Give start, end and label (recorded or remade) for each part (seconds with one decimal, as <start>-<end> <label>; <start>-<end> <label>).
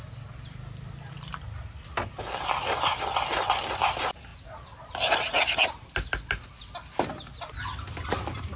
0.0-8.6 recorded